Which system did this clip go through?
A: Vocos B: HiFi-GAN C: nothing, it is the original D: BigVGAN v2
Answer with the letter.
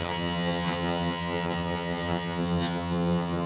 B